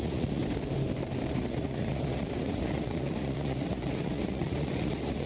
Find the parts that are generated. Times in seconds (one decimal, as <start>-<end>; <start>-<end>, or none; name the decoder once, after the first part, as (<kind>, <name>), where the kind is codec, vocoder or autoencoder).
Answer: 0.0-0.4 (vocoder, Vocos); 1.3-5.3